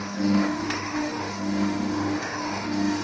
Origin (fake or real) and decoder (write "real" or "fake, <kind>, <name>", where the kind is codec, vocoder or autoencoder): fake, autoencoder, DAC-VAE